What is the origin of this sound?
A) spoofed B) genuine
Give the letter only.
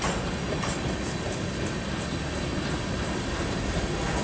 B